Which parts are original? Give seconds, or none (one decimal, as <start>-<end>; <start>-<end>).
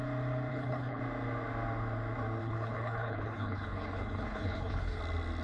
0.0-0.5; 1.0-2.4; 5.0-5.4